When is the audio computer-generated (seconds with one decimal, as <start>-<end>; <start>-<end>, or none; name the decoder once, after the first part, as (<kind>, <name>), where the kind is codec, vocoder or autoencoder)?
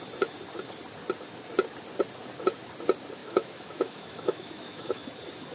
3.2-5.0 (autoencoder, DAC-VAE)